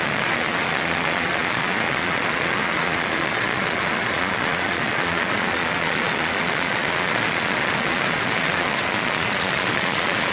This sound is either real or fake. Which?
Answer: fake